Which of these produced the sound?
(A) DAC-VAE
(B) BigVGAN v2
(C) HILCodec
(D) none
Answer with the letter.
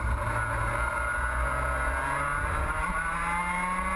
D